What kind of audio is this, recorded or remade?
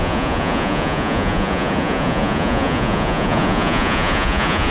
remade